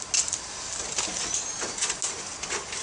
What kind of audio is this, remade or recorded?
recorded